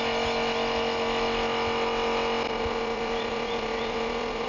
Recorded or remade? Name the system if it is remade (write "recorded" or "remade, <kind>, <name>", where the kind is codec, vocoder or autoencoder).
recorded